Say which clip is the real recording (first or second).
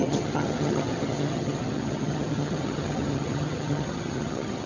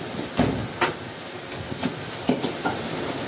second